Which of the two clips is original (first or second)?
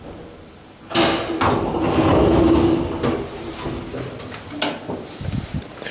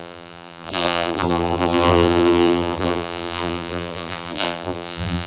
first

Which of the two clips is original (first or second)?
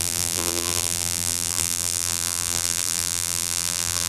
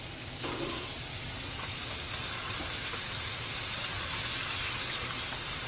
second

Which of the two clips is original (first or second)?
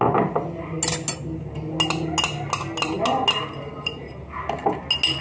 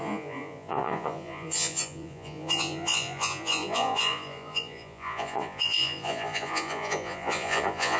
first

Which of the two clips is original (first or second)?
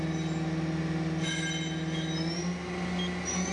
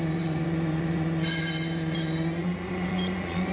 first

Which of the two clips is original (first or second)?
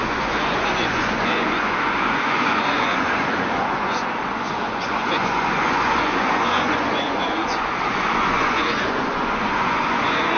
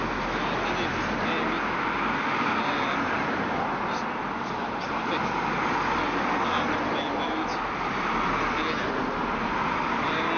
second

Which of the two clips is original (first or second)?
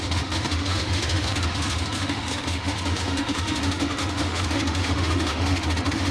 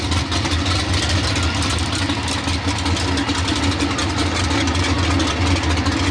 second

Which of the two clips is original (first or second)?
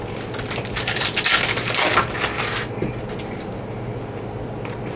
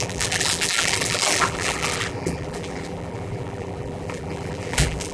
first